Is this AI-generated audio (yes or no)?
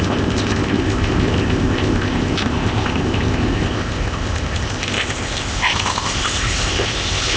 yes